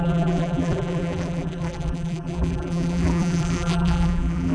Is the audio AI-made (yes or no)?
yes